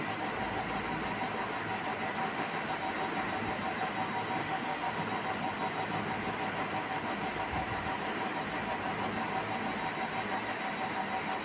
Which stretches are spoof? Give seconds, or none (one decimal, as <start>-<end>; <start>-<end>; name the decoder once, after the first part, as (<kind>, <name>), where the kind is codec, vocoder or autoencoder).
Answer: 2.2-2.7 (autoencoder, DAC-VAE); 4.4-5.0